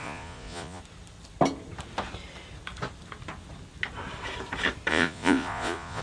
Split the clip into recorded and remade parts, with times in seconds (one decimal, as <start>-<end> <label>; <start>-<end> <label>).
0.0-0.8 remade; 0.8-4.9 recorded; 4.9-6.0 remade